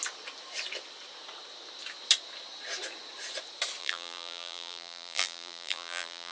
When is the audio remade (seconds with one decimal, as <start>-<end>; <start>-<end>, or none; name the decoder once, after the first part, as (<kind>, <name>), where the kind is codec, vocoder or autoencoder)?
3.8-6.3 (vocoder, BigVGAN v2)